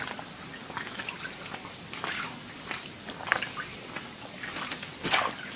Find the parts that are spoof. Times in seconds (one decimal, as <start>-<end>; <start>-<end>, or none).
none